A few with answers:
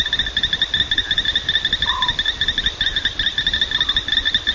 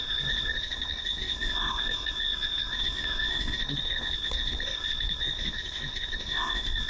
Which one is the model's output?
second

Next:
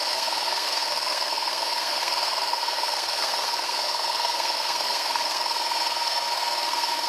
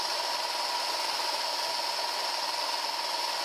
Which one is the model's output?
first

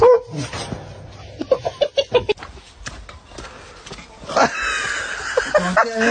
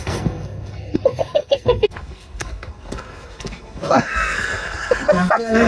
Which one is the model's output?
second